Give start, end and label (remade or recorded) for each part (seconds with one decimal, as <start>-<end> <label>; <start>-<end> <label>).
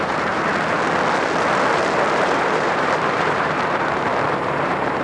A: 0.0-0.5 remade; 0.5-2.2 recorded; 2.2-5.0 remade